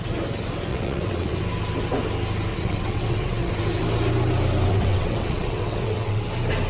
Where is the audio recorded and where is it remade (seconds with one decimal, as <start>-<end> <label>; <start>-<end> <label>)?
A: 0.0-0.7 recorded; 0.7-1.4 remade; 1.4-2.5 recorded; 2.5-3.5 remade; 3.5-4.7 recorded; 4.7-6.2 remade; 6.2-6.7 recorded